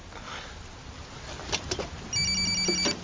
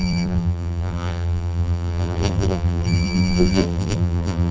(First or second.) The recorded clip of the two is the first